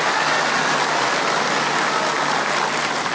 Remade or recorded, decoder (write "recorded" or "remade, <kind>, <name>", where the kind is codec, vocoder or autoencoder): recorded